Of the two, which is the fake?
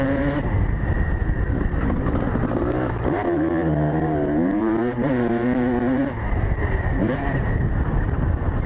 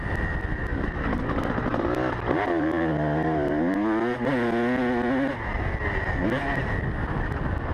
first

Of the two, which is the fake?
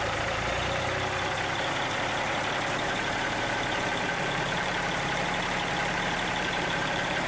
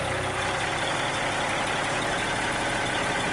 first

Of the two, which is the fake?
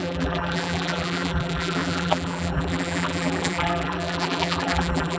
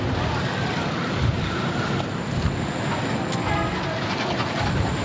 first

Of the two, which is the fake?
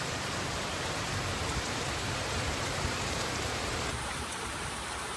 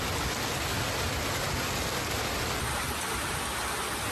first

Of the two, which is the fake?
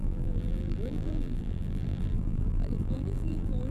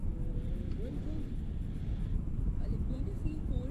first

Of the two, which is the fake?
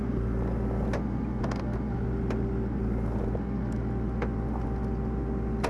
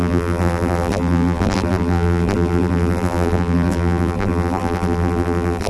second